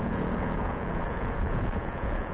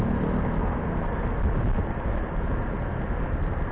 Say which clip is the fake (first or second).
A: first